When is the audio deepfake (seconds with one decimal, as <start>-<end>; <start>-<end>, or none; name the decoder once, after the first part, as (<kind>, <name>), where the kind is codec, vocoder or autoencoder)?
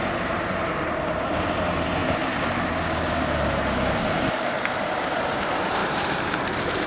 0.0-2.0 (vocoder, BigVGAN v2); 3.1-6.9